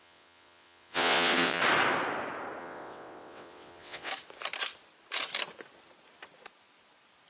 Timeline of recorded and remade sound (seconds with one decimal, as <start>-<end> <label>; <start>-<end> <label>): 0.0-1.6 remade; 1.6-2.6 recorded; 2.6-4.1 remade; 4.1-7.3 recorded

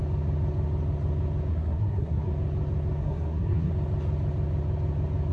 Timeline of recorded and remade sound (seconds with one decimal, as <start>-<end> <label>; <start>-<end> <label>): 0.0-1.5 recorded; 1.5-2.3 remade; 2.3-3.0 recorded; 3.0-3.7 remade; 3.7-5.3 recorded

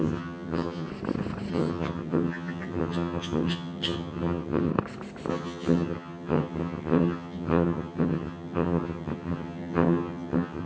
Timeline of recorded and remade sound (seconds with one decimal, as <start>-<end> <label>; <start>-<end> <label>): 0.0-0.9 remade; 0.9-1.5 recorded; 1.5-4.7 remade; 4.7-5.3 recorded; 5.3-10.7 remade

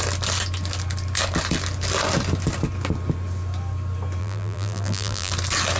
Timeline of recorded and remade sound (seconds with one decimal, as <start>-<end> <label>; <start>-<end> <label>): 0.0-4.2 recorded; 4.2-5.3 remade; 5.3-5.8 recorded

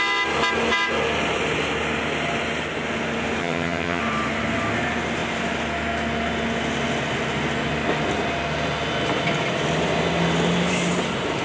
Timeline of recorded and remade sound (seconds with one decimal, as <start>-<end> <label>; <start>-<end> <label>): 0.0-3.4 recorded; 3.4-4.0 remade; 4.0-11.4 recorded

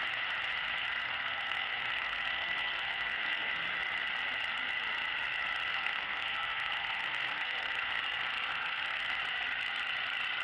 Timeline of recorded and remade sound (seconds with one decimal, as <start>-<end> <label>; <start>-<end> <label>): 0.0-1.0 recorded; 1.0-3.5 remade; 3.5-5.7 recorded; 5.7-8.0 remade; 8.0-8.5 recorded; 8.5-9.2 remade; 9.2-10.4 recorded

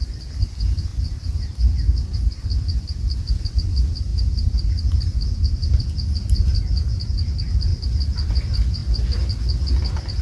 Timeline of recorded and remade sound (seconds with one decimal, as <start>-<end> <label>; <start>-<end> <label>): 0.0-7.7 recorded; 7.7-8.3 remade; 8.3-10.2 recorded

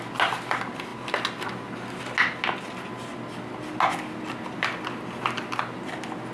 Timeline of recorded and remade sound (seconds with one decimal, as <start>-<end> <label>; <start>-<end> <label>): 0.0-6.3 recorded